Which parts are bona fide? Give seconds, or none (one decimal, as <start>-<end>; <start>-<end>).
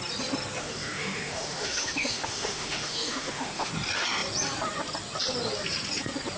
0.0-0.6; 3.7-6.4